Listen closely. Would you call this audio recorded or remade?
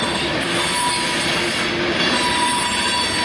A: recorded